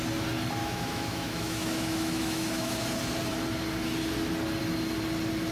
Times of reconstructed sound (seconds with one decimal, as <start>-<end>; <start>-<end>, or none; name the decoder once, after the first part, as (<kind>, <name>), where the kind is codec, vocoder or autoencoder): 0.6-2.8 (autoencoder, DAC-VAE)